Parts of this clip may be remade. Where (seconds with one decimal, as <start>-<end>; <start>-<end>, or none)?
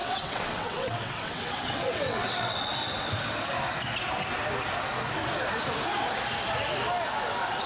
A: 0.0-2.7